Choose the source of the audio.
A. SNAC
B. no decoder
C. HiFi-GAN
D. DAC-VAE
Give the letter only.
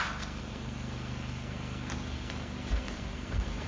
A